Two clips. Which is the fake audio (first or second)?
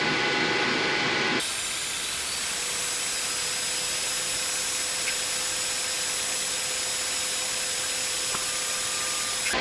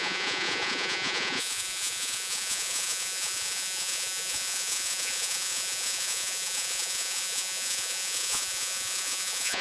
second